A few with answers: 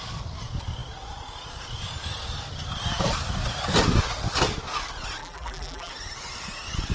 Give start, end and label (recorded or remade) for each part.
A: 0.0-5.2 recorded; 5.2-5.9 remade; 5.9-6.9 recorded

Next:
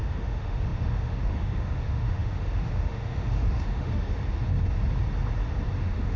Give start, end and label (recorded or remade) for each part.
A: 0.0-4.2 remade; 4.2-5.8 recorded; 5.8-6.2 remade

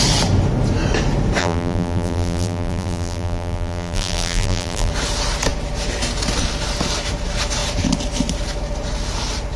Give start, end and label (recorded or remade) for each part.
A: 0.0-1.4 recorded; 1.4-4.9 remade; 4.9-9.6 recorded

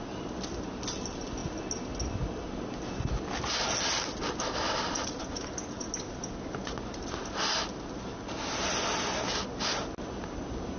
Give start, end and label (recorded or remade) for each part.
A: 0.0-10.8 recorded

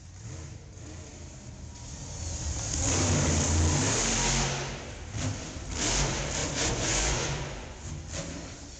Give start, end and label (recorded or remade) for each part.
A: 0.0-6.4 recorded; 6.4-7.9 remade; 7.9-8.8 recorded

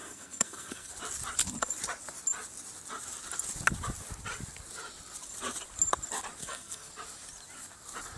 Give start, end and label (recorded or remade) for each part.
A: 0.0-0.9 remade; 0.9-6.4 recorded; 6.4-6.9 remade; 6.9-8.2 recorded

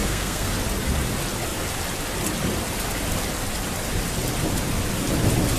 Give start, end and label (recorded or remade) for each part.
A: 0.0-0.5 remade; 0.5-5.6 recorded